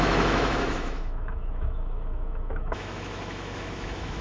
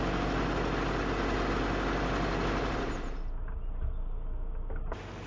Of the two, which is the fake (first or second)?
first